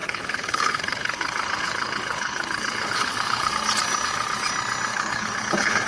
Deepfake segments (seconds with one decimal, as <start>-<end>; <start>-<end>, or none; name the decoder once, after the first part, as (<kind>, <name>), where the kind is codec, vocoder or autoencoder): 0.0-3.5 (codec, HILCodec); 4.9-5.9